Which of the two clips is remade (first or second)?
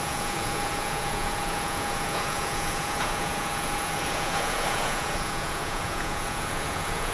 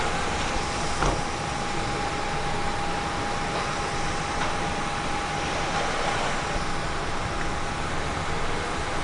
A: first